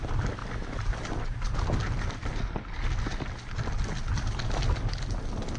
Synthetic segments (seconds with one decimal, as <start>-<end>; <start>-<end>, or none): none